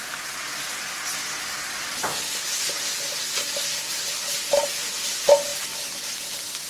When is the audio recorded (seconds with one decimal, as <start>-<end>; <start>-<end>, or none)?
0.0-5.5; 6.2-6.7